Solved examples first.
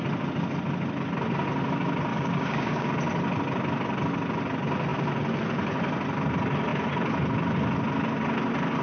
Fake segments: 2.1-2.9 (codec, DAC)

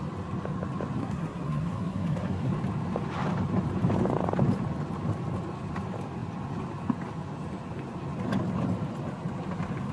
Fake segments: 1.0-2.5 (codec, SNAC)

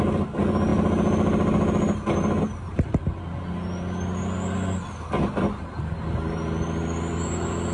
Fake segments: none

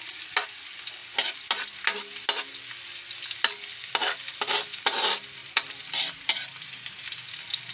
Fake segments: none

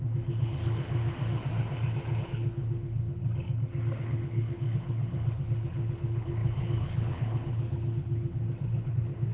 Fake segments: 0.0-1.0 (codec, HILCodec); 2.2-3.2; 4.0-9.3